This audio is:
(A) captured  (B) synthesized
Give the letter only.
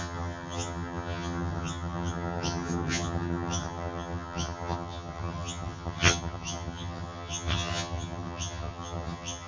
B